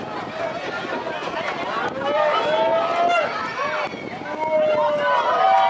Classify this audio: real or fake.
real